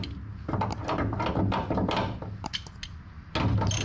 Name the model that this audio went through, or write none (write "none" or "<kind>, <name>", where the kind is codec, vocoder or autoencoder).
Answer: none